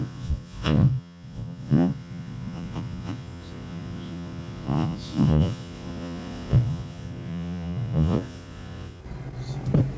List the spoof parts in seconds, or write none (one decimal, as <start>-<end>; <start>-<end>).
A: 0.0-9.0